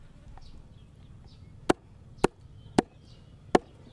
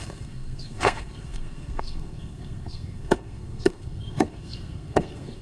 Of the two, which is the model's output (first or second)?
second